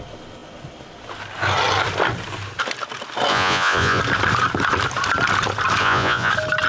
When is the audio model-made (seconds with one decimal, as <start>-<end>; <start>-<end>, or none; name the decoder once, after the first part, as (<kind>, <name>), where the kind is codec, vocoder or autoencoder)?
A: 3.3-4.0 (vocoder, Vocos); 5.8-6.3